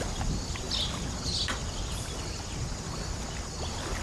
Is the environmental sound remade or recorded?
recorded